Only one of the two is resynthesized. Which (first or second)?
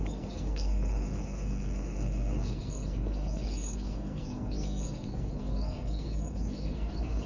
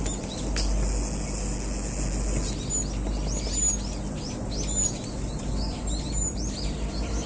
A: first